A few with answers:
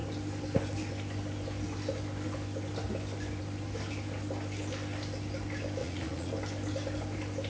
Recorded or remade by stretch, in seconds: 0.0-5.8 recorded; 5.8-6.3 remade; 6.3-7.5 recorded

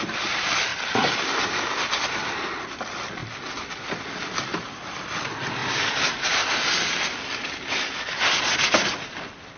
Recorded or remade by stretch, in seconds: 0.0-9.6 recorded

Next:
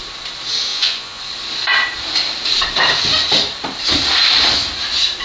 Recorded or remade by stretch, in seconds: 0.0-0.7 recorded; 0.7-1.2 remade; 1.2-5.2 recorded

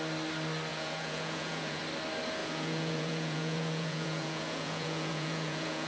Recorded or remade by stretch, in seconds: 0.0-0.7 recorded; 0.7-1.8 remade; 1.8-2.4 recorded; 2.4-5.9 remade

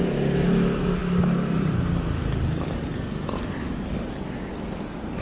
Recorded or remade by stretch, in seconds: 0.0-5.2 recorded

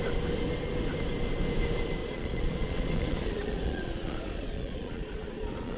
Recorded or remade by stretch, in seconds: 0.0-2.0 recorded; 2.0-5.8 remade